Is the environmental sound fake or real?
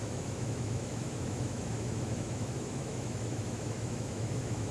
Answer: fake